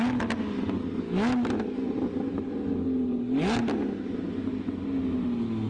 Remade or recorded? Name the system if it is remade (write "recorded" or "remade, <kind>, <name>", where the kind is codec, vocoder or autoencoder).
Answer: recorded